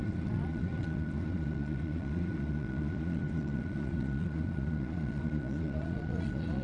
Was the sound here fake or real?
fake